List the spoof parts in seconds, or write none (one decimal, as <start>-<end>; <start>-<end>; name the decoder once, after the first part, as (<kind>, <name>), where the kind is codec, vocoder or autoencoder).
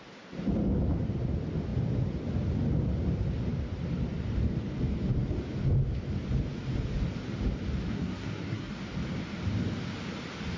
7.9-8.7 (codec, SNAC)